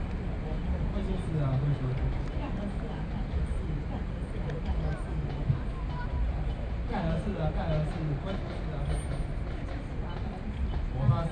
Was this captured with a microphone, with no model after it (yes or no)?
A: yes